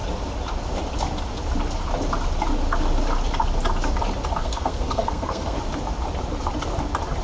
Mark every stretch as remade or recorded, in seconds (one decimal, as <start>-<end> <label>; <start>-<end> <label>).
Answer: 0.0-4.4 recorded; 4.4-5.6 remade; 5.6-7.2 recorded